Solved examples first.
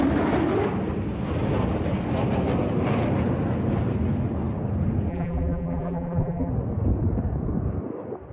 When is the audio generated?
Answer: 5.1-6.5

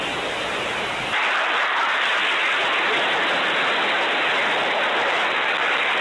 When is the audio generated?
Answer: 0.0-2.2

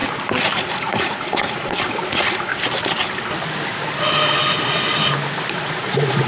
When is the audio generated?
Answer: 0.6-2.5; 5.5-6.3